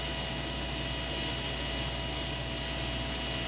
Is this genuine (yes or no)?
yes